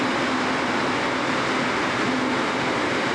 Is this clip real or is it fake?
real